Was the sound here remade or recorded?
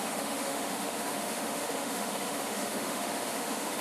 remade